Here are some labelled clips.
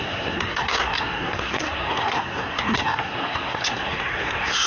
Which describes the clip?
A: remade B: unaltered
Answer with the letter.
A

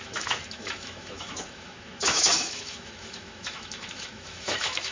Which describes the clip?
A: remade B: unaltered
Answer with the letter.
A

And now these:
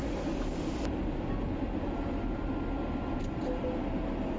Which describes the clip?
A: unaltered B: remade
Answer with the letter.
A